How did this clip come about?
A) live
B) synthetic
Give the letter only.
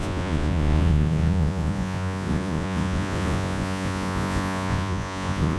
B